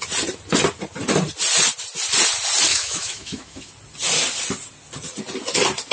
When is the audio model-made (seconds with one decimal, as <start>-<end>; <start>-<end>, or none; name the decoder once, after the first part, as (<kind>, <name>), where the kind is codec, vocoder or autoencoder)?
2.7-3.7 (autoencoder, DAC-VAE)